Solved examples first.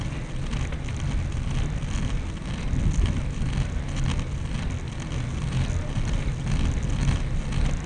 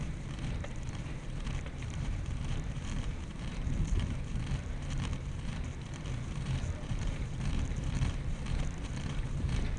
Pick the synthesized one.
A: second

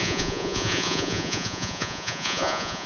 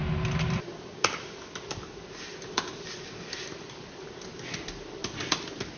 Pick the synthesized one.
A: first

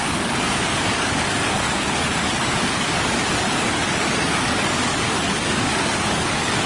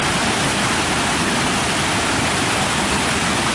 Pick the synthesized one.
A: first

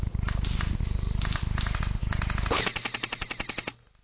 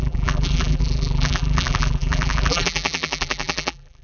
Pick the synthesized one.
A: second